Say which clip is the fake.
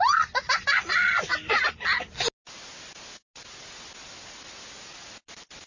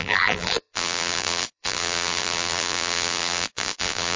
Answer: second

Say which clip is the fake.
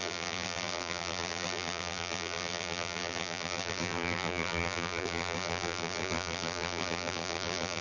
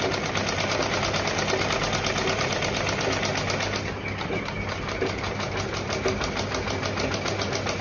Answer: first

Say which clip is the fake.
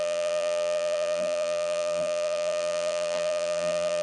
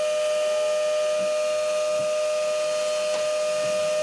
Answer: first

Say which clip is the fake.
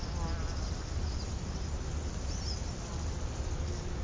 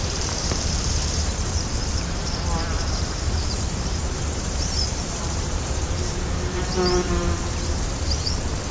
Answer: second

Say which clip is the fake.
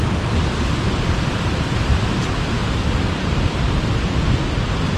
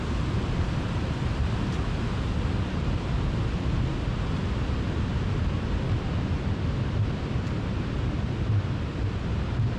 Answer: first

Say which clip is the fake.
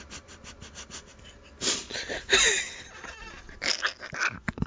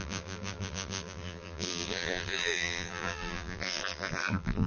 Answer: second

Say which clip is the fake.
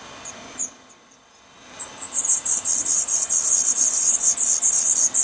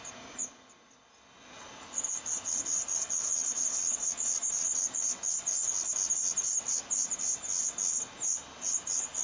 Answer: first